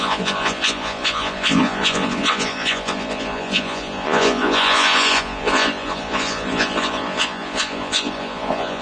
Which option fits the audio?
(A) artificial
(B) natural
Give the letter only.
A